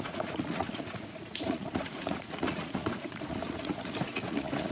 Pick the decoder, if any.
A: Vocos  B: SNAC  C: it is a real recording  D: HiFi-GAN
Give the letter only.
A